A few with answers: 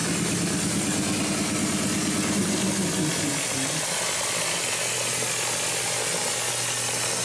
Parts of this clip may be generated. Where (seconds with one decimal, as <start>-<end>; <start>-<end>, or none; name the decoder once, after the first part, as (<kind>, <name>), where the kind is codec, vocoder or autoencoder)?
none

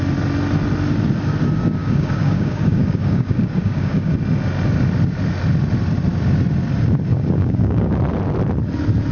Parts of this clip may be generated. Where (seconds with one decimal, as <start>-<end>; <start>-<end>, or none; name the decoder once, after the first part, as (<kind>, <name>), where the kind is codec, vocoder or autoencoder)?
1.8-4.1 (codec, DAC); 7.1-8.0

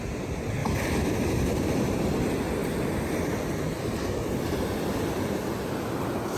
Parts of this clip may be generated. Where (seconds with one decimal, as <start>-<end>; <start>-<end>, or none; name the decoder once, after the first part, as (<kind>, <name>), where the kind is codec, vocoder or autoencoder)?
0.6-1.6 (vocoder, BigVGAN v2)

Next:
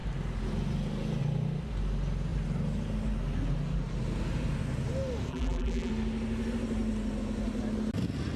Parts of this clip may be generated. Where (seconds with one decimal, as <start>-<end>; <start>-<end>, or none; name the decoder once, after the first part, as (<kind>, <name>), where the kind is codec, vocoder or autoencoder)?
5.3-5.9 (vocoder, BigVGAN v2)

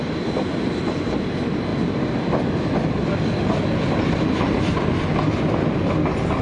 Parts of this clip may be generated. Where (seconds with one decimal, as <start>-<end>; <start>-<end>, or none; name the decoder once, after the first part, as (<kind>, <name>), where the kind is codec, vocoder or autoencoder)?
none

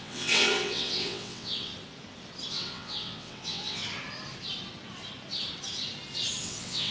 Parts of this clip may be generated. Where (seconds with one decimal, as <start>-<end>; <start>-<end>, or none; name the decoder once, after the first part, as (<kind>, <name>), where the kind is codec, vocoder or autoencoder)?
0.0-1.7 (vocoder, WaveNeXt); 2.5-3.8; 6.4-6.9

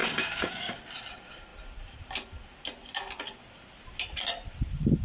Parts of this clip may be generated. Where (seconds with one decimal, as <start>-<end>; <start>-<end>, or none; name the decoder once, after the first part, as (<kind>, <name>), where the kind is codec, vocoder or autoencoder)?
0.0-0.8 (codec, DAC)

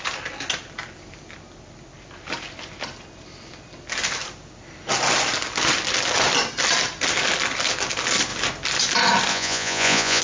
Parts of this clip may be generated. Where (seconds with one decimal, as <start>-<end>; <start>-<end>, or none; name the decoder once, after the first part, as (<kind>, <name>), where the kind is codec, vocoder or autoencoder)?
9.3-10.2 (vocoder, Vocos)